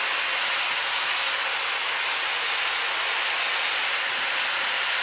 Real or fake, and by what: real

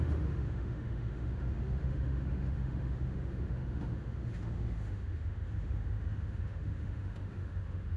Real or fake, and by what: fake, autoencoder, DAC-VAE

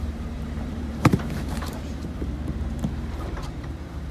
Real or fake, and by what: fake, vocoder, BigVGAN v2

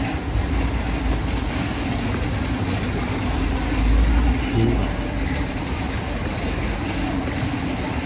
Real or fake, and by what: real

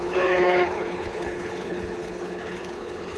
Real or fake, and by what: fake, codec, HILCodec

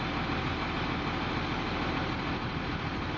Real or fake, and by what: real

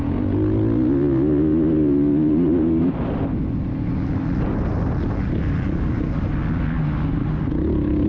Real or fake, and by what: real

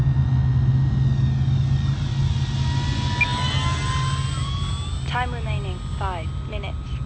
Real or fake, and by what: real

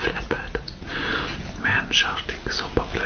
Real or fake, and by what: real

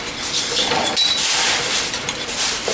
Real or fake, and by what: real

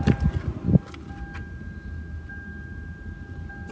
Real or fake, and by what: real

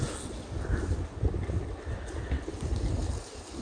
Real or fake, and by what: real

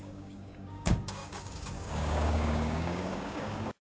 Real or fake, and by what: fake, codec, DAC